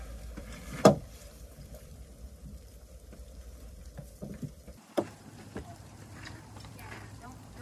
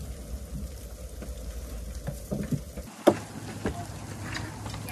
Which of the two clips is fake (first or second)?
first